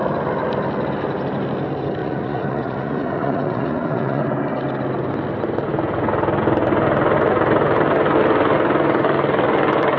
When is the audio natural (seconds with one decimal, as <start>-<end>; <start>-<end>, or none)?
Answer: 0.0-2.0; 4.2-10.0